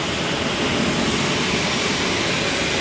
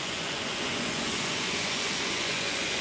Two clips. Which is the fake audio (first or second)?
second